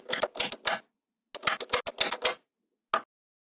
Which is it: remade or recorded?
recorded